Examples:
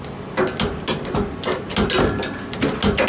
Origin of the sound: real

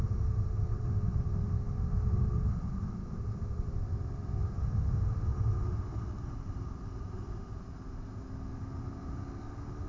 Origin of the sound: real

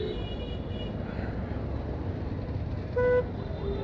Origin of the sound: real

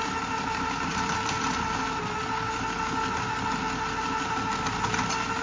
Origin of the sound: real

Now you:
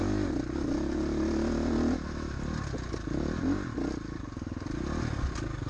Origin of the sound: real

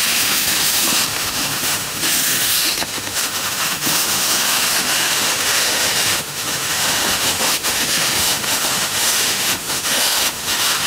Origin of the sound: fake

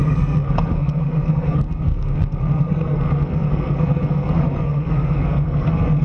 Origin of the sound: fake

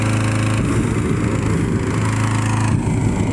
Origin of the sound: real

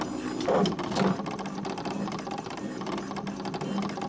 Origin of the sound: real